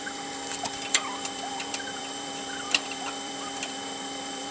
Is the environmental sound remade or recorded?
remade